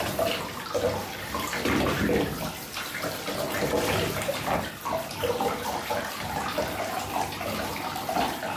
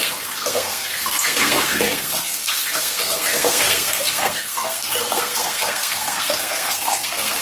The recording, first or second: first